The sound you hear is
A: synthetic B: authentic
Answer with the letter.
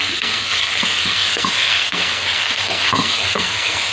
A